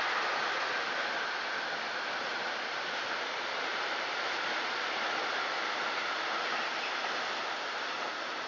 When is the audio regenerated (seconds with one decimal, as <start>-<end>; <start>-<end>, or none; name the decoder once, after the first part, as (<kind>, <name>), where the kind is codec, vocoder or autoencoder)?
none